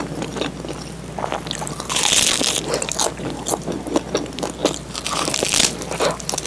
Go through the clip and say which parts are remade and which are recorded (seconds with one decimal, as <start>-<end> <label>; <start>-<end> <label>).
0.0-6.5 recorded